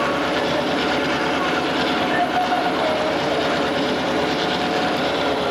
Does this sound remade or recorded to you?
remade